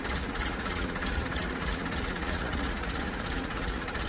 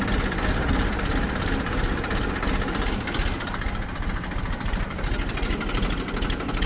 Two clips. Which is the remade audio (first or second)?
first